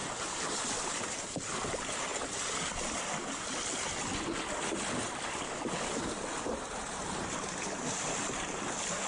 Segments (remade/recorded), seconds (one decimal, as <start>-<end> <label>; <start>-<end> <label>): 0.0-9.1 recorded